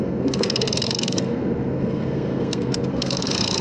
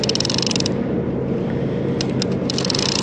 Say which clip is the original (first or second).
second